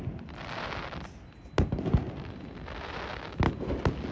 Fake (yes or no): no